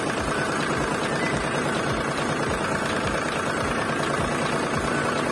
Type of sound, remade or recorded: recorded